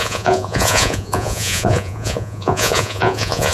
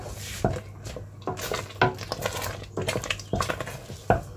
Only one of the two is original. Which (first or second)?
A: second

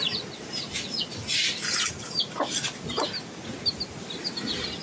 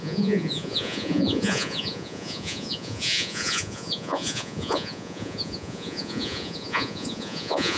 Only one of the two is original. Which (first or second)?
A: first